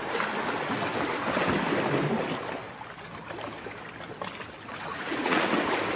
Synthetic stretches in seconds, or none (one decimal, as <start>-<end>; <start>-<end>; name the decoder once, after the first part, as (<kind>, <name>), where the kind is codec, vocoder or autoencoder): 4.9-5.5 (vocoder, Vocos)